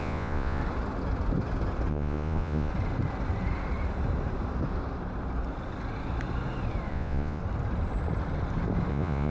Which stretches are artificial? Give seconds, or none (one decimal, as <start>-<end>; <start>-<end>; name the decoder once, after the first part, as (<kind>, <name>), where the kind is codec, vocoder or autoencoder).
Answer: 0.0-0.6 (vocoder, Vocos); 1.9-2.7; 6.9-7.4; 8.9-9.3